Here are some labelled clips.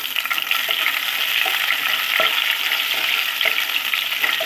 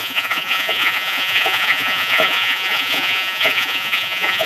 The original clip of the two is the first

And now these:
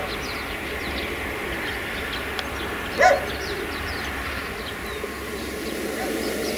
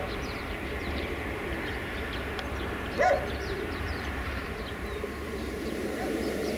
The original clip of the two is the first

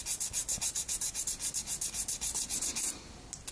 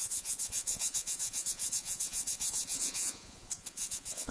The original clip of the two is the first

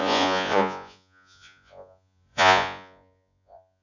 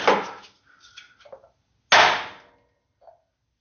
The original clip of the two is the second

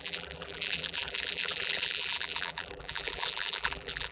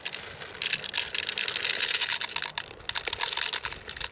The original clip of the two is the second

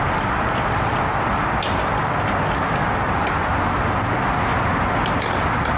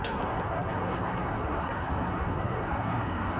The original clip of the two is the first